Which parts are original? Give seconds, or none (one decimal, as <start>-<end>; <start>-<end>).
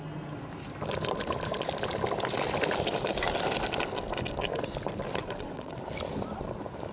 0.0-5.2; 5.8-6.9